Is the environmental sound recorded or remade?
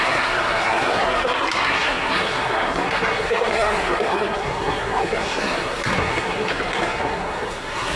remade